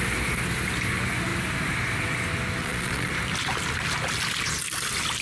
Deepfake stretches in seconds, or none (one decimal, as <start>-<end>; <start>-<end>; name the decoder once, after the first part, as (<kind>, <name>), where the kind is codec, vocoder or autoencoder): 2.6-3.1 (vocoder, Vocos)